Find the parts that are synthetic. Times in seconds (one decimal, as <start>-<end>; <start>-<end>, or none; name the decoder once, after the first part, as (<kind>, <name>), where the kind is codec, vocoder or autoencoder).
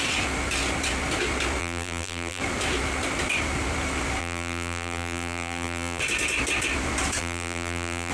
1.6-2.4 (vocoder, BigVGAN v2); 4.2-6.0; 7.2-8.1